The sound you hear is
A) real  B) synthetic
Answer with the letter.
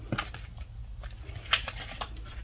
A